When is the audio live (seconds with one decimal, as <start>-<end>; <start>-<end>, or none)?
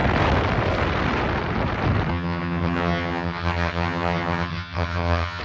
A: 0.0-2.1